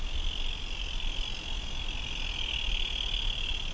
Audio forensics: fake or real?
real